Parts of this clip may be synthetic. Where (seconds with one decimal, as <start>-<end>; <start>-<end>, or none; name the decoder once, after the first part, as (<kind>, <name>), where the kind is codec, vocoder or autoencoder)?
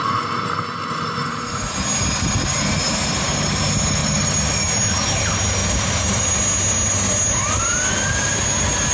4.0-4.5 (vocoder, BigVGAN v2); 5.6-6.4